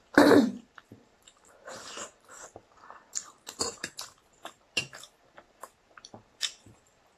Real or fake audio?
fake